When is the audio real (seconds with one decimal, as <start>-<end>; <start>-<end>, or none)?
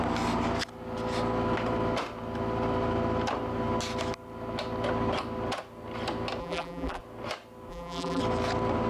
0.0-6.4; 7.0-7.7; 8.2-8.9